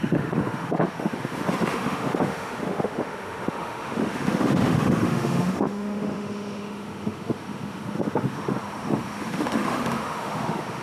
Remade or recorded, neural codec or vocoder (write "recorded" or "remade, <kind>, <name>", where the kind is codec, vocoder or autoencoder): remade, autoencoder, DAC-VAE